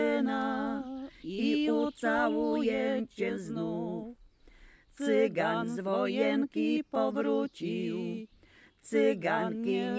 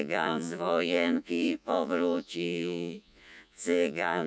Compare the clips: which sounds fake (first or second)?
second